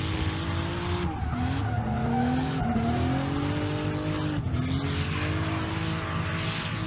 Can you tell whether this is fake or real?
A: real